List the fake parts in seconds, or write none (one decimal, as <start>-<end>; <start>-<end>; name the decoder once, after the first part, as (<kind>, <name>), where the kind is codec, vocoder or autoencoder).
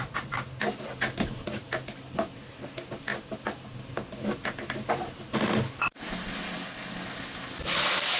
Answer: none